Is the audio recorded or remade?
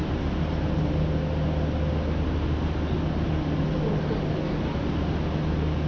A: recorded